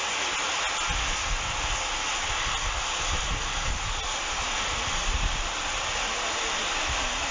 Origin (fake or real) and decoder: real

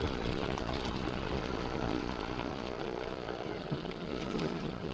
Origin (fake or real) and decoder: fake, vocoder, Vocos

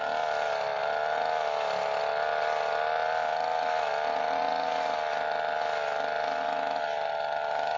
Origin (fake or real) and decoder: real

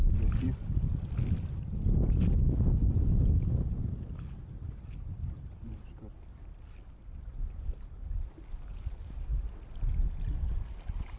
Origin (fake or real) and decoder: real